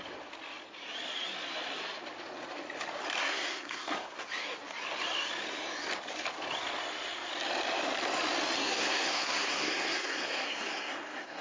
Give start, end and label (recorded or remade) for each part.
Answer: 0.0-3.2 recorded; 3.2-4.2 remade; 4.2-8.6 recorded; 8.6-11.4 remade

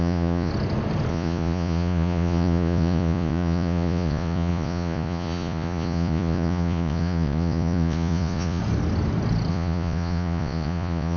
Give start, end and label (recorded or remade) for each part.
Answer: 0.0-0.5 remade; 0.5-1.1 recorded; 1.1-8.6 remade; 8.6-9.5 recorded; 9.5-11.2 remade

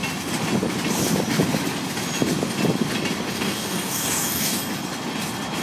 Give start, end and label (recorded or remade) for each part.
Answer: 0.0-3.3 recorded; 3.3-4.6 remade; 4.6-5.6 recorded

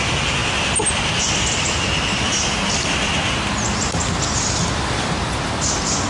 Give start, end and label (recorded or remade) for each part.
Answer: 0.0-6.1 recorded

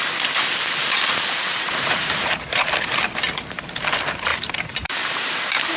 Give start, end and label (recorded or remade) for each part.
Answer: 0.0-0.8 recorded; 0.8-3.1 remade; 3.1-4.3 recorded; 4.3-5.8 remade

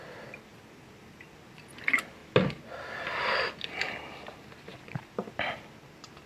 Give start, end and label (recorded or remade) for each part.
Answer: 0.0-0.5 recorded; 0.5-1.7 remade; 1.7-6.3 recorded

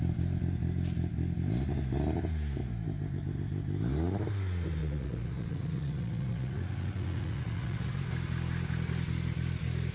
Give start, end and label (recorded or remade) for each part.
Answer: 0.0-4.8 recorded; 4.8-7.9 remade; 7.9-9.9 recorded